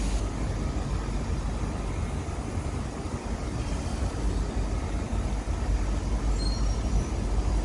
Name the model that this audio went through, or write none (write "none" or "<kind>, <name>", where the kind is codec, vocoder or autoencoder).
none